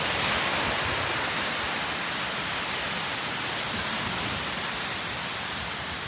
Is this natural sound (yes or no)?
yes